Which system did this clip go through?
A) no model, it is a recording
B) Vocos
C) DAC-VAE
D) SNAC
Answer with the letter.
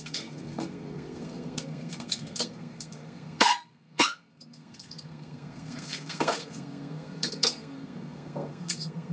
D